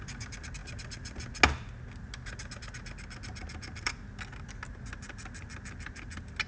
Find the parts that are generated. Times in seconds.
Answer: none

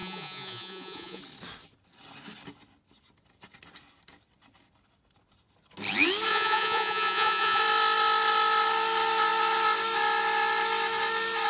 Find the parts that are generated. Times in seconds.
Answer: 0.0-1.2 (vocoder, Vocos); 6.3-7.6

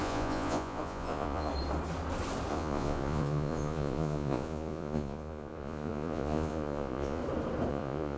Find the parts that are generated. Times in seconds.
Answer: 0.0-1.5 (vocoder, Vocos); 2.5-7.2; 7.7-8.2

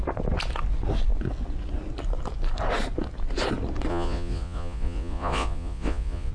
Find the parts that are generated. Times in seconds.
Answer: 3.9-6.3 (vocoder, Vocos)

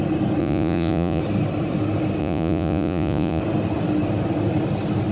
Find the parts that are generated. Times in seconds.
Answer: 0.4-1.2 (vocoder, Vocos); 2.2-3.4

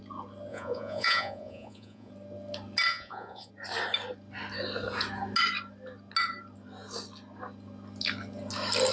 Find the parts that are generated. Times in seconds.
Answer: 0.5-2.1 (vocoder, Vocos); 2.9-3.5

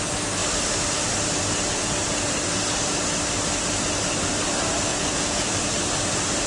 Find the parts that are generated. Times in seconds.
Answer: 4.9-5.5 (vocoder, Vocos)

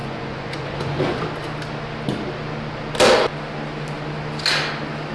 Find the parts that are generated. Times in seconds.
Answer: 0.0-1.2 (vocoder, Vocos)